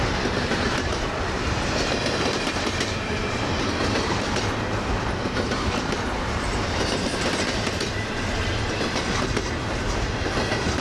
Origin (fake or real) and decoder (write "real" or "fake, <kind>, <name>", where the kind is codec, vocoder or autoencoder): fake, vocoder, BigVGAN v2